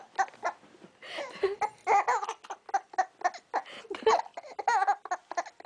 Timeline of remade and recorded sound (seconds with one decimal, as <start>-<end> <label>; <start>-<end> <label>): 0.0-5.7 recorded